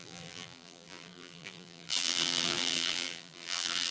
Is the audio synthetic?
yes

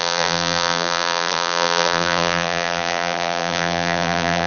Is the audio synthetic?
yes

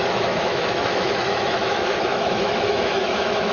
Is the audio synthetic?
yes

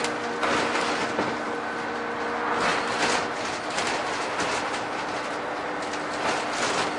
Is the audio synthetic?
no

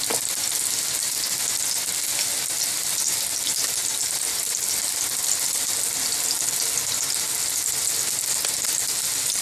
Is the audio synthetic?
no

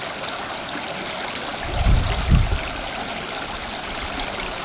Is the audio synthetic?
no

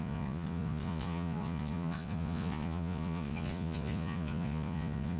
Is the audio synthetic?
yes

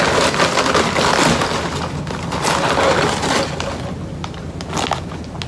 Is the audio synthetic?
no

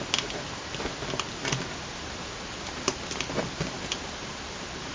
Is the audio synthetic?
no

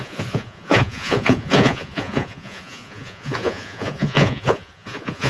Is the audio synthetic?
yes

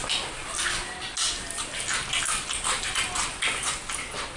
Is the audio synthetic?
no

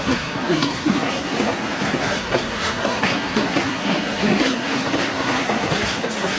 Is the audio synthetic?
yes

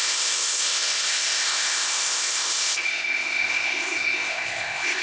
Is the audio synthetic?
yes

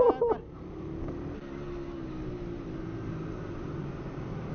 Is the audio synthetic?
no